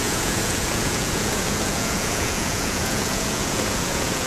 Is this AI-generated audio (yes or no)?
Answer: yes